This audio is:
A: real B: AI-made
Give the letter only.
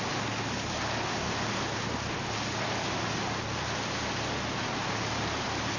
A